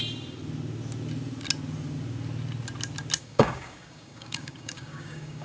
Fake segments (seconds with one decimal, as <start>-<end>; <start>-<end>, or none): 3.2-5.4